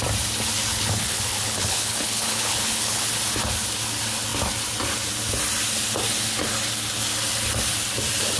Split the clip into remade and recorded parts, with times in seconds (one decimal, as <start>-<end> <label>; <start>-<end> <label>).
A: 0.0-0.7 recorded; 0.7-3.2 remade; 3.2-8.4 recorded

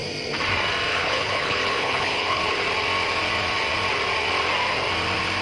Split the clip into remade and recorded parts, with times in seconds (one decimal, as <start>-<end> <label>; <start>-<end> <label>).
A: 0.0-0.9 recorded; 0.9-2.4 remade; 2.4-5.4 recorded

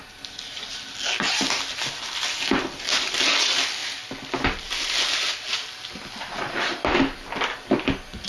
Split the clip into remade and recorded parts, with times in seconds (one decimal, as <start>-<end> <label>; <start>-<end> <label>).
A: 0.0-8.3 recorded